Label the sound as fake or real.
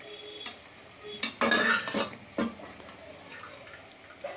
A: real